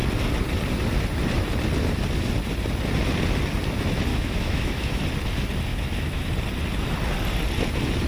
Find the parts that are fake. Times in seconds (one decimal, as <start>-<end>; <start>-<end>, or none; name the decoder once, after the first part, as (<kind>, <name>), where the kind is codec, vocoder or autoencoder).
4.1-5.0 (autoencoder, DAC-VAE); 5.7-6.3